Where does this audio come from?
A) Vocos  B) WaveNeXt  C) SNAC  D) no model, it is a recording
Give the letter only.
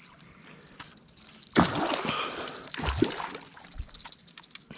D